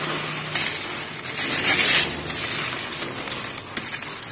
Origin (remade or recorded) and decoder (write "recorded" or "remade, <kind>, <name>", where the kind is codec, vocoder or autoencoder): recorded